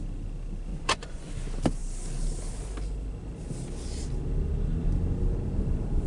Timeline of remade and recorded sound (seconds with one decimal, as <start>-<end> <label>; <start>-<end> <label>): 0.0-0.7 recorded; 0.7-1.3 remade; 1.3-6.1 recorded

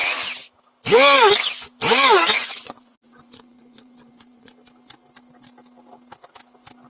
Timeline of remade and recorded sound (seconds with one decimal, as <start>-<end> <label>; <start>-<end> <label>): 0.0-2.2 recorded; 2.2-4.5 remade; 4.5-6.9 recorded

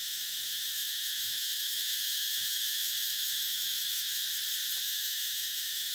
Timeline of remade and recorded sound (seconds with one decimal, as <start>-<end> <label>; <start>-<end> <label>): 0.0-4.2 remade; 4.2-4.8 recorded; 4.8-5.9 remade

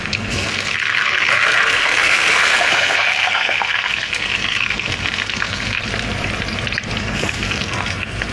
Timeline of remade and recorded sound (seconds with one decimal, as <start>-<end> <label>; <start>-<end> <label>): 0.0-5.8 remade; 5.8-7.0 recorded; 7.0-8.3 remade

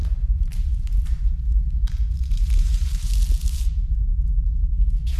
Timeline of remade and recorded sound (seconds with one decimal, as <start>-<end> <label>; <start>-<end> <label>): 0.0-3.1 remade; 3.1-5.2 recorded

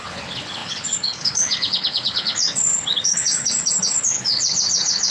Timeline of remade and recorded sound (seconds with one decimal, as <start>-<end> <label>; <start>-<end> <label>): 0.0-5.1 remade

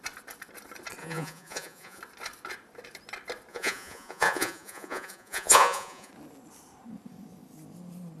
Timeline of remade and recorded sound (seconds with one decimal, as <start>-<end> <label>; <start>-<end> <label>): 0.0-1.0 recorded; 1.0-2.0 remade; 2.0-3.5 recorded; 3.5-6.1 remade; 6.1-8.2 recorded